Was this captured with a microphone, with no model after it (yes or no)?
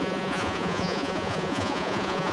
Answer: no